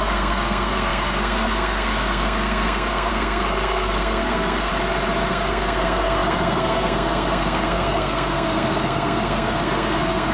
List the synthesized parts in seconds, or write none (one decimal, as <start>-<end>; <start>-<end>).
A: 0.0-4.7; 5.3-10.3